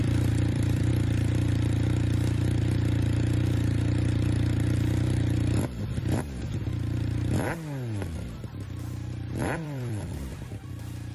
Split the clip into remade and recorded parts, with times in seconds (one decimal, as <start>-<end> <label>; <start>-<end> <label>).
0.0-0.9 remade; 0.9-9.4 recorded; 9.4-10.7 remade; 10.7-11.1 recorded